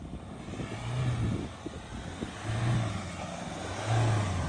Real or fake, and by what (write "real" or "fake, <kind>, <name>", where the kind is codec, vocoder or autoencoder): real